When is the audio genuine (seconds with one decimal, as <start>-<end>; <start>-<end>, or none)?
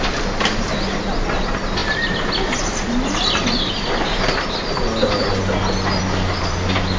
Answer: 0.0-7.0